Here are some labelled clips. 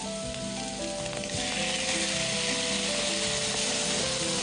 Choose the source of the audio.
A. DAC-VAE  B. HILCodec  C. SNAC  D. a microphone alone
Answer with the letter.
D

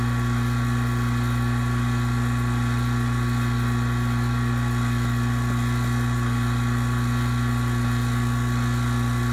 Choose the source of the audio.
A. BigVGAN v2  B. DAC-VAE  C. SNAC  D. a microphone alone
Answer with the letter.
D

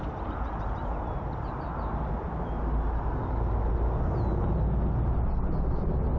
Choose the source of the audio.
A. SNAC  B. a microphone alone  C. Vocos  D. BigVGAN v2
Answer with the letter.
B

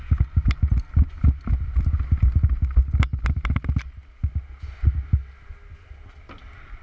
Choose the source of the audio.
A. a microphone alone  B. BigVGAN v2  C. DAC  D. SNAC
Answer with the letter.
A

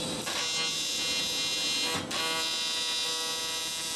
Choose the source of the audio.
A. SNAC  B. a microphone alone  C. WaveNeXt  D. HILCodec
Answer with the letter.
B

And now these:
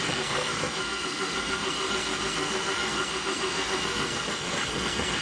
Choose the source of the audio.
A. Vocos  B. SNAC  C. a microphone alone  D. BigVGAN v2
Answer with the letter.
B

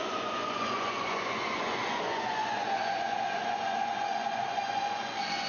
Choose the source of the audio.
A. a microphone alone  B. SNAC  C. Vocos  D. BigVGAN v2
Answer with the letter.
C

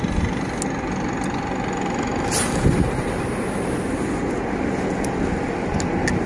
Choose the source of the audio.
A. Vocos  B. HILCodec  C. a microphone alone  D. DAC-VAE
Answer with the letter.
C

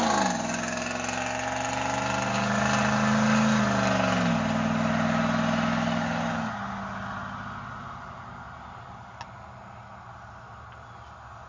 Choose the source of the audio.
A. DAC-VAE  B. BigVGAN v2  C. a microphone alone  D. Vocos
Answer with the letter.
C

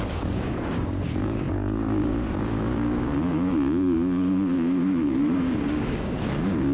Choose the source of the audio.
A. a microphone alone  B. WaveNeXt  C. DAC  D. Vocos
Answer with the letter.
C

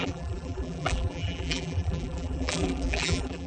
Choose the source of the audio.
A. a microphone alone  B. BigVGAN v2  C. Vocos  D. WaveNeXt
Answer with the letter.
B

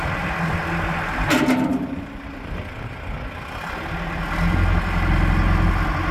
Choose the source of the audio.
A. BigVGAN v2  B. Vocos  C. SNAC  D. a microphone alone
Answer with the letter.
D